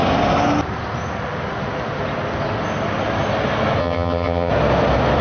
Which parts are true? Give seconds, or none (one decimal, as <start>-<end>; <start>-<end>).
0.0-3.8; 4.5-5.2